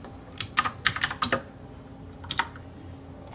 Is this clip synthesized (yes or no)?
no